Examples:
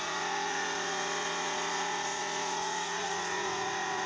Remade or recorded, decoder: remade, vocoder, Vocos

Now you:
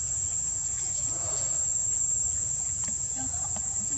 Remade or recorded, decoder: remade, vocoder, Vocos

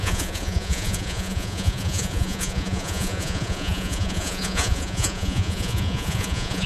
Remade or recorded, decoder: remade, vocoder, Vocos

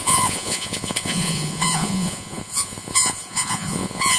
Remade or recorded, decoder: remade, vocoder, Vocos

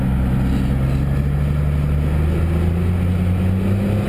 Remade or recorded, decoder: recorded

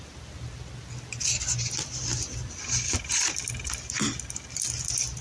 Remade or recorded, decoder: recorded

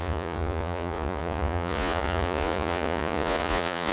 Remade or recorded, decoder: remade, vocoder, Vocos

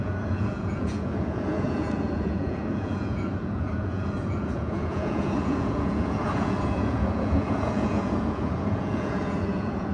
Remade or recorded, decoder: remade, vocoder, Vocos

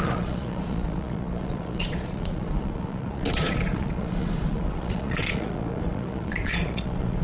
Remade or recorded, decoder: remade, vocoder, Vocos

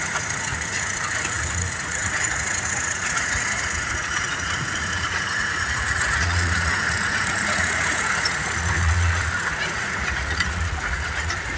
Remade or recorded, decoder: remade, vocoder, Vocos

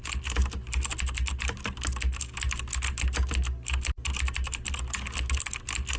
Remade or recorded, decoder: recorded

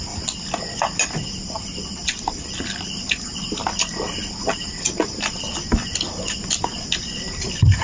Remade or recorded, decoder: recorded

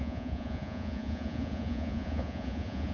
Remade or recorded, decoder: remade, vocoder, Vocos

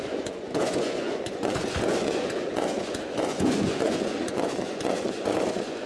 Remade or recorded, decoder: remade, vocoder, Vocos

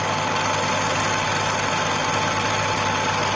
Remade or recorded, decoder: recorded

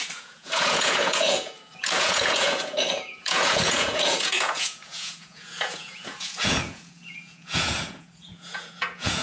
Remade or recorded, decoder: remade, vocoder, Vocos